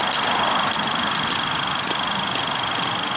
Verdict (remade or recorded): recorded